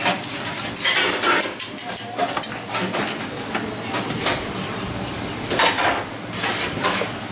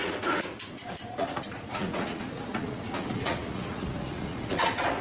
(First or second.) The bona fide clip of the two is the first